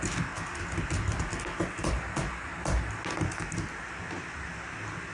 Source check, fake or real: real